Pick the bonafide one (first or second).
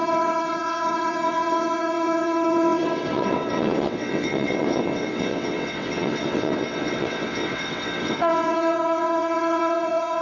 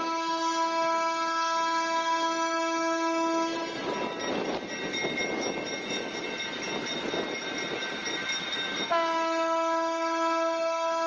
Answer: second